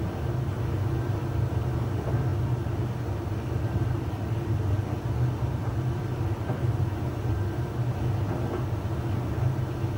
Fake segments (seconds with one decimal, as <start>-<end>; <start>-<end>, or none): 2.3-6.8